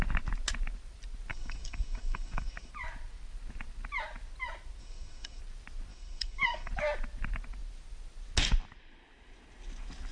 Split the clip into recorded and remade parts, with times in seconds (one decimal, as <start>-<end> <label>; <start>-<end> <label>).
0.0-1.3 recorded; 1.3-2.7 remade; 2.7-4.8 recorded; 4.8-5.4 remade; 5.4-5.9 recorded; 5.9-6.7 remade; 6.7-10.1 recorded